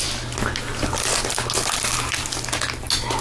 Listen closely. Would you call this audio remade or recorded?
recorded